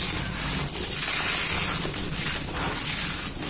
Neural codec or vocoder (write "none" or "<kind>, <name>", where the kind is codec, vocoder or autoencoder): none